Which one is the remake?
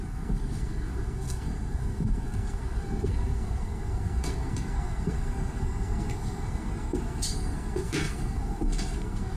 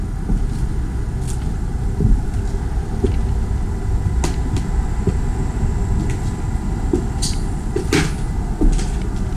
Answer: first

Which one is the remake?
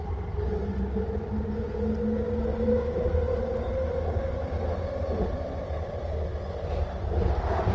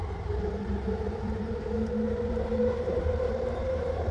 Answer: second